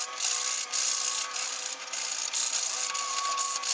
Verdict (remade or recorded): recorded